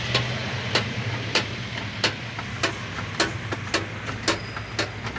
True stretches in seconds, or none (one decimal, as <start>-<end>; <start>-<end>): 0.0-5.2